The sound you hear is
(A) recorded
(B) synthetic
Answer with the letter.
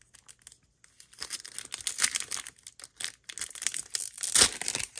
A